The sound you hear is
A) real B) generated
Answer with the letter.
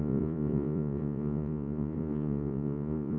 B